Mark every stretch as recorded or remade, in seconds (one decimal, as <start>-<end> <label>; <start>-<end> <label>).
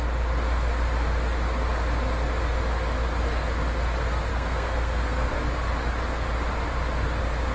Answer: 0.0-4.3 recorded; 4.3-5.3 remade; 5.3-7.5 recorded